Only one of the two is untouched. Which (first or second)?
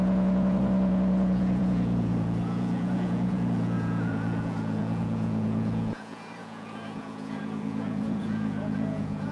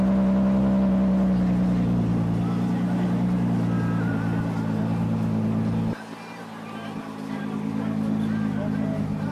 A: second